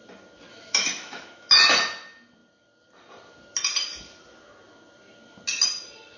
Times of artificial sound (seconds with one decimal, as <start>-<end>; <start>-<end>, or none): 0.5-1.5